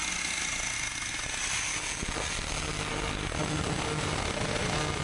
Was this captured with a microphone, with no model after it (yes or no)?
yes